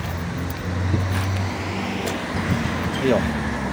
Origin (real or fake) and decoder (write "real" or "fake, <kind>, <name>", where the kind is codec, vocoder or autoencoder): real